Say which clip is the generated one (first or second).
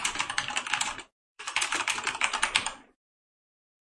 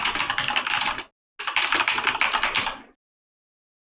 first